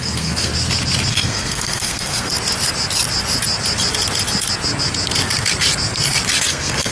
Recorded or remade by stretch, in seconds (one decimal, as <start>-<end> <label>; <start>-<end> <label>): 0.0-0.5 remade; 0.5-1.1 recorded; 1.1-2.3 remade; 2.3-6.4 recorded; 6.4-6.9 remade